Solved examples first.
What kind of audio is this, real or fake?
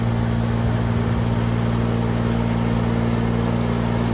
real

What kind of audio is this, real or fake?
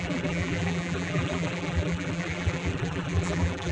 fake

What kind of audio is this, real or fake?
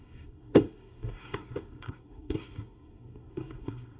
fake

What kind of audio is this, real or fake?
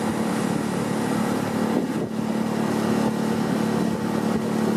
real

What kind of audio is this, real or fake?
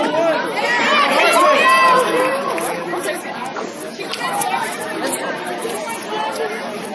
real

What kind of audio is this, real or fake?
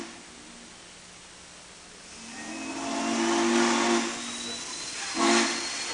real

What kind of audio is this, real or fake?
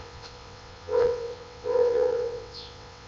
fake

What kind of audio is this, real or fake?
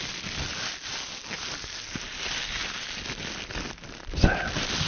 real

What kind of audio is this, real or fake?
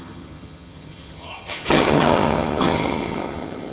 fake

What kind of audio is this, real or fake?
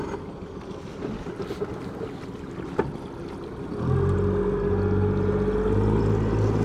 real